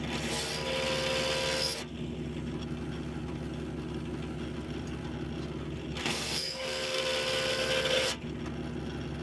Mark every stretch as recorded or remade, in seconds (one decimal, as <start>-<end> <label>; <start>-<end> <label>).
0.0-6.0 recorded; 6.0-7.0 remade; 7.0-9.2 recorded